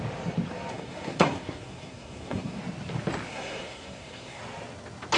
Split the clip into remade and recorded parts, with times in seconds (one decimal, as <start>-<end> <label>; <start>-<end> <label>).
0.0-0.7 recorded; 0.7-2.6 remade; 2.6-3.3 recorded; 3.3-4.4 remade; 4.4-5.2 recorded